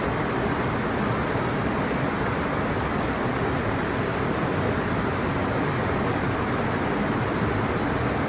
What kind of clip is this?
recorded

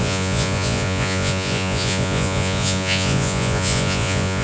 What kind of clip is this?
remade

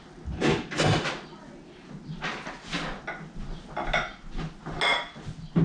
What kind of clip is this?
recorded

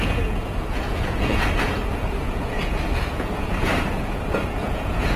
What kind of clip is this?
remade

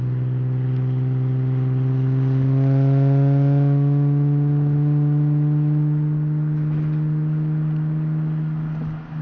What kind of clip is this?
recorded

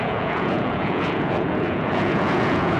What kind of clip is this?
remade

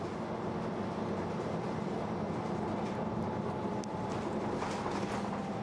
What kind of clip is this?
recorded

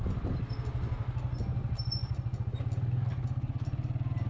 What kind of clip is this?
recorded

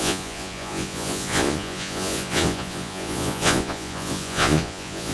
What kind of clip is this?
remade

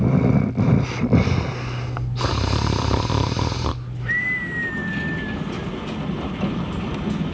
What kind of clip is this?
recorded